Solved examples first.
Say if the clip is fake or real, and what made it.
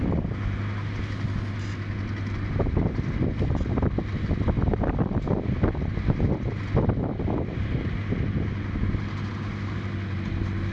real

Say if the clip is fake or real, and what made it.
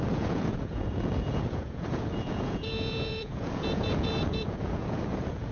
fake, vocoder, Vocos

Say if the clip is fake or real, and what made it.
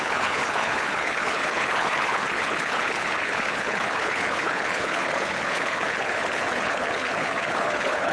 fake, codec, HILCodec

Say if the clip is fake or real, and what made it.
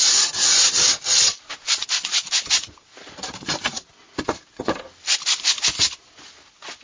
real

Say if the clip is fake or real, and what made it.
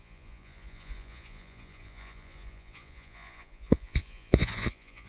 fake, vocoder, Vocos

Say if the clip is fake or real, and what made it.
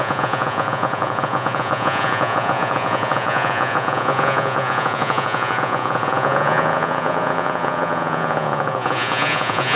fake, vocoder, Vocos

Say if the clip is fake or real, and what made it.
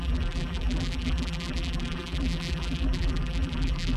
fake, vocoder, BigVGAN v2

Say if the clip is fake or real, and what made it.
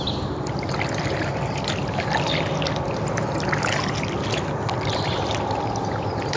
real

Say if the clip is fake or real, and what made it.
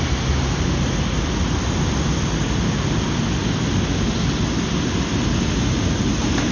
real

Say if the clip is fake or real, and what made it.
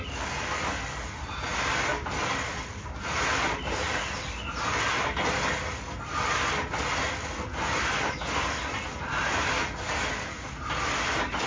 real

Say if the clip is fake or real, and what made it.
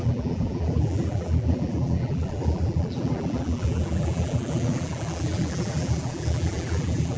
fake, vocoder, BigVGAN v2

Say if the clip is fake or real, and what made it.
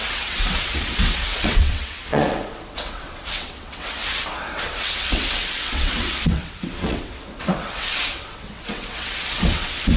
fake, vocoder, WaveNeXt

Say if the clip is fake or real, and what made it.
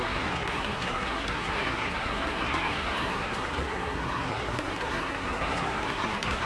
fake, codec, SNAC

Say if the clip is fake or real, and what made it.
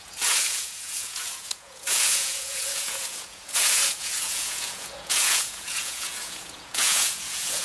fake, vocoder, Vocos